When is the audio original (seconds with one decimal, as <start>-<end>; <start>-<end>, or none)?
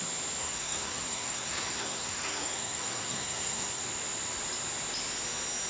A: 0.0-0.4; 3.8-5.7